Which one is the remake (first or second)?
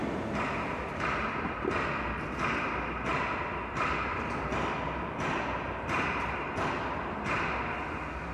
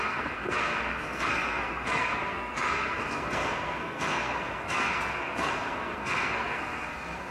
second